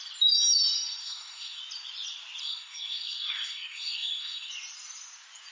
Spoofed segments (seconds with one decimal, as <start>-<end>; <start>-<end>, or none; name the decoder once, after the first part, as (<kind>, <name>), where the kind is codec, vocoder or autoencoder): 1.0-1.6 (codec, SNAC); 2.4-4.5